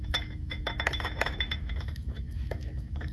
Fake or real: fake